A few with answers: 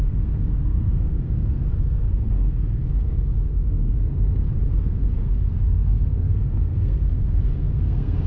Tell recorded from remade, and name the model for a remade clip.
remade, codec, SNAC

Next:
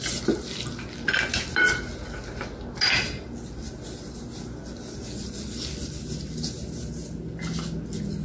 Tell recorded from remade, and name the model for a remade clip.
recorded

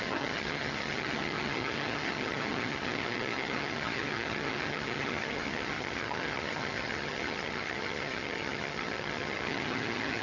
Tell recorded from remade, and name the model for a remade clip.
remade, vocoder, HiFi-GAN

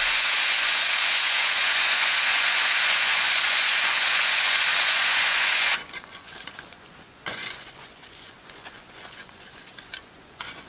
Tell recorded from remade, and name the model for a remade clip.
remade, vocoder, Vocos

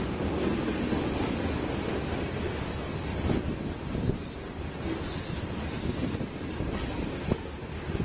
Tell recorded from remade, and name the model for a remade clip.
recorded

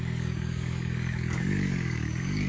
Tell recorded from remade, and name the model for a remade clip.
remade, codec, DAC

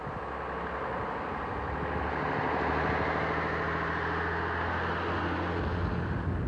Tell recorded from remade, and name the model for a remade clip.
recorded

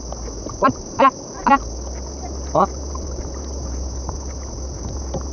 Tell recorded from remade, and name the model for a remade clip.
recorded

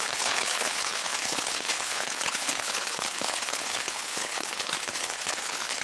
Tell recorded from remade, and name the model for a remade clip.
remade, codec, HILCodec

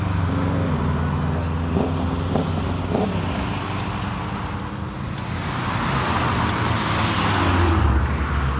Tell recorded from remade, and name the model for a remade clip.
recorded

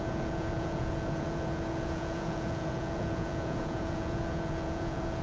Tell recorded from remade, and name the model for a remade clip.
remade, vocoder, Vocos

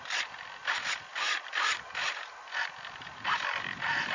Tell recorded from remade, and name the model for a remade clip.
recorded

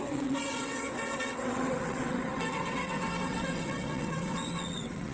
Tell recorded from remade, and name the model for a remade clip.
remade, vocoder, WaveNeXt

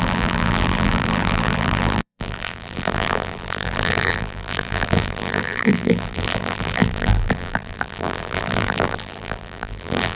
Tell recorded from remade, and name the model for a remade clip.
remade, vocoder, BigVGAN v2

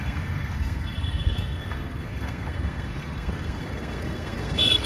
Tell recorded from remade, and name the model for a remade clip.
remade, codec, SNAC